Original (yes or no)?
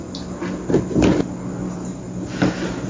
yes